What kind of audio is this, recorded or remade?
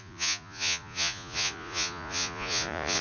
remade